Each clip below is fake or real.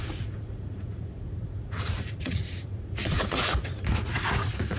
fake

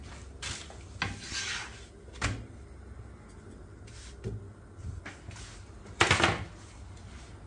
real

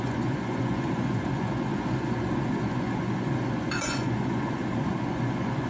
fake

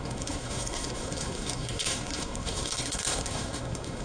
fake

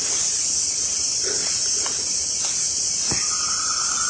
real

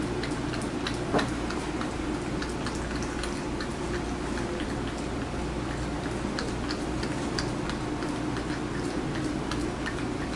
real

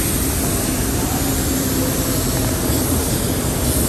real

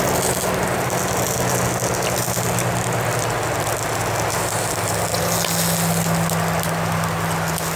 real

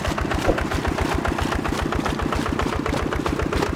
real